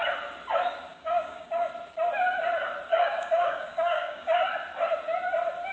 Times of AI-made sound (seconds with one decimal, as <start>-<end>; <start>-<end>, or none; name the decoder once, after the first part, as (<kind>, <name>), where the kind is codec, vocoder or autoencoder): 0.9-1.7 (codec, DAC); 2.9-4.4